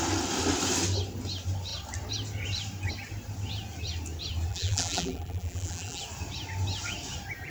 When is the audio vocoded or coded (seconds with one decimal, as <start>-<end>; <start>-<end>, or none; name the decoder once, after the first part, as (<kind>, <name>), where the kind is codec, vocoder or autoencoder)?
4.5-6.0 (vocoder, BigVGAN v2)